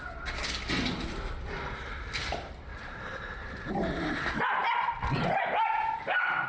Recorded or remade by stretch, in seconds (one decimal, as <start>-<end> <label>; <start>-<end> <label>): 0.0-6.5 recorded